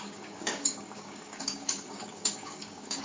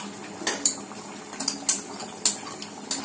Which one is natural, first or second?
second